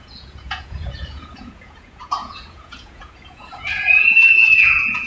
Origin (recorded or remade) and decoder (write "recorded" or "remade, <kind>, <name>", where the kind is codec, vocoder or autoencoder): remade, vocoder, Vocos